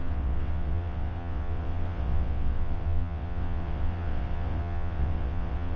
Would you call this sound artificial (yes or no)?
yes